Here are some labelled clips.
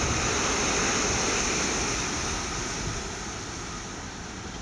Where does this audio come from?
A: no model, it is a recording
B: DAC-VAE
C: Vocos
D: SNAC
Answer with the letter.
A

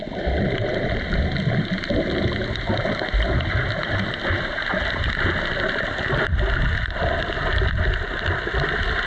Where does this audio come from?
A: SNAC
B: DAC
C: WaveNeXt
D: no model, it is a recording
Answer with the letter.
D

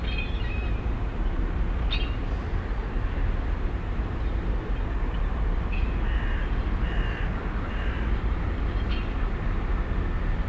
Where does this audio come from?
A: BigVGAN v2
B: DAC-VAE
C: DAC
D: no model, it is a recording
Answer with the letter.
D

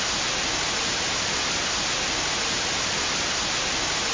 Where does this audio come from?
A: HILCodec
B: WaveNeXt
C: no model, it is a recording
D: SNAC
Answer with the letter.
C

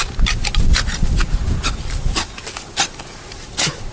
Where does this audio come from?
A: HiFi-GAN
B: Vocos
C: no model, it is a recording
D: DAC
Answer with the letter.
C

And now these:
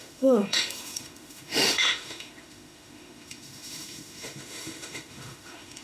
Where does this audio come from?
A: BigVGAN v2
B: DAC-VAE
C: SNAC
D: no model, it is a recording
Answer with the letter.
B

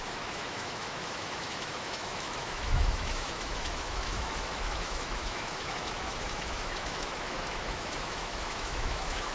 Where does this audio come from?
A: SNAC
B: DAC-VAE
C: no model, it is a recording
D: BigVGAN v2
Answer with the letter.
B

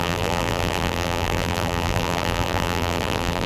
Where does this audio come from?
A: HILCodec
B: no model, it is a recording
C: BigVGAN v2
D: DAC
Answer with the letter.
C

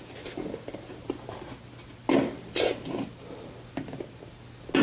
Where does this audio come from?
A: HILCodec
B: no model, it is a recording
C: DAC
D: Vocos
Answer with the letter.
B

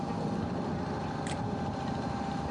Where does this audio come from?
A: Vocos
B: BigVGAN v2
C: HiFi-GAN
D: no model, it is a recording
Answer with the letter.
B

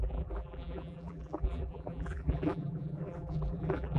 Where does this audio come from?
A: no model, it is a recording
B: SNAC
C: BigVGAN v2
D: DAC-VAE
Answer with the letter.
C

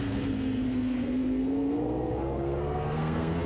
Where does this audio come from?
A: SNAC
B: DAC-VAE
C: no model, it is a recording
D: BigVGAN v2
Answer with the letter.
A